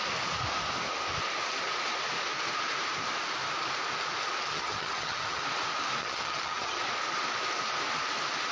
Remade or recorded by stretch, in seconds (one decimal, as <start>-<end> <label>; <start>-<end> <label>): 0.0-4.5 recorded; 4.5-5.4 remade; 5.4-6.0 recorded; 6.0-6.8 remade; 6.8-8.5 recorded